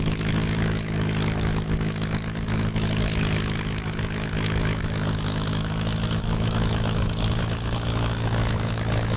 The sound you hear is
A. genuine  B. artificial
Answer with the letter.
B